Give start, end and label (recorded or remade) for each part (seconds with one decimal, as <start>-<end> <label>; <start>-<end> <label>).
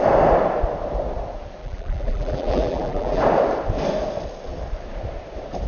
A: 0.0-1.6 recorded; 1.6-3.2 remade; 3.2-5.7 recorded